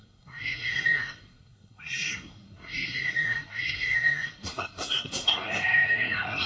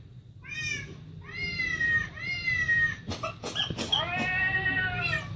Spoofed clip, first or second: first